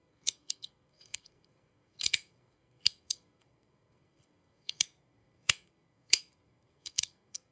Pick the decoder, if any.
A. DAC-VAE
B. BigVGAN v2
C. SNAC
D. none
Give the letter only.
C